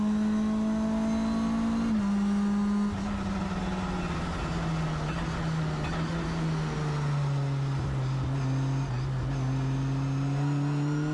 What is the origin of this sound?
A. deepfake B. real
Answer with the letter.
B